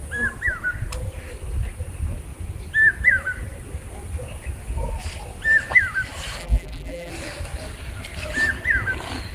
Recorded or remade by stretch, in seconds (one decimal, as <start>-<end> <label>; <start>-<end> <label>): 0.0-6.4 recorded; 6.4-7.1 remade; 7.1-9.3 recorded